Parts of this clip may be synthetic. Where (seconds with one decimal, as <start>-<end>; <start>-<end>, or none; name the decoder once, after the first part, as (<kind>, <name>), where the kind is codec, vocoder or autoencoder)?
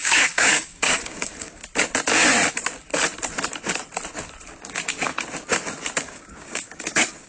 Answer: 0.0-1.6 (codec, DAC); 4.6-5.1; 6.0-7.3